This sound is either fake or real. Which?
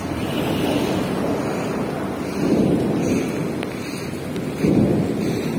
real